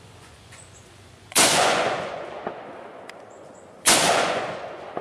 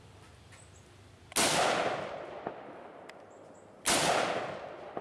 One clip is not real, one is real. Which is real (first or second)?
second